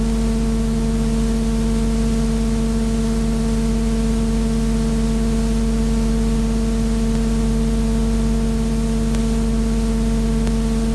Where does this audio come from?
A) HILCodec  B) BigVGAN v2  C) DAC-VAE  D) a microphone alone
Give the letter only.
D